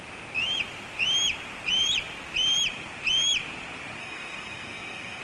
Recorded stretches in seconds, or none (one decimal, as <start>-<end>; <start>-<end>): 0.0-4.0